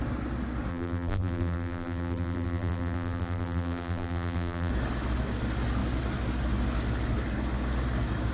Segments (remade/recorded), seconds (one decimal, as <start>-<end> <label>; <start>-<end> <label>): 0.0-0.7 recorded; 0.7-4.7 remade; 4.7-8.3 recorded